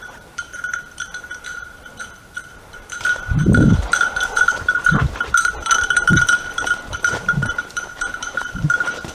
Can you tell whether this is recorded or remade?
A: remade